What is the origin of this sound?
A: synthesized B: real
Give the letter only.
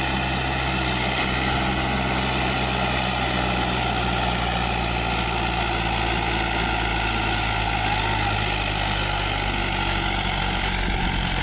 B